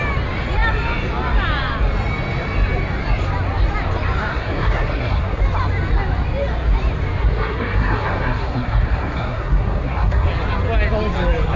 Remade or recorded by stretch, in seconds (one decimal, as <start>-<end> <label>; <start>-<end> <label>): 0.0-4.3 recorded; 4.3-5.4 remade; 5.4-7.2 recorded; 7.2-10.3 remade; 10.3-11.6 recorded